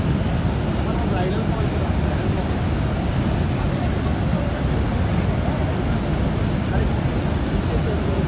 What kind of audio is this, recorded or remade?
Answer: recorded